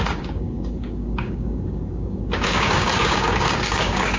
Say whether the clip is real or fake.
fake